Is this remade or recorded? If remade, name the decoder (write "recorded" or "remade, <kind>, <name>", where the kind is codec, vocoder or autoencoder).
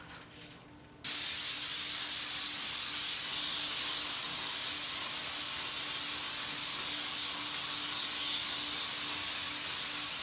recorded